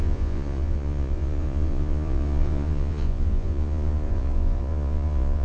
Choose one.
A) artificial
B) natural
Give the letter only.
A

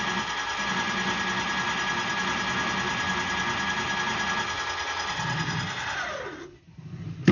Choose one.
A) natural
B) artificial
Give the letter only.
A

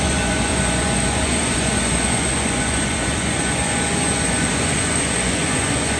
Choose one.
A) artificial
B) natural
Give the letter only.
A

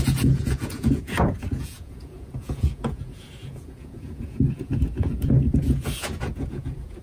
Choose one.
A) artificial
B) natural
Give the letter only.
A